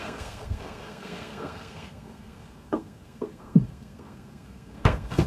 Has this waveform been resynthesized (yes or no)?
yes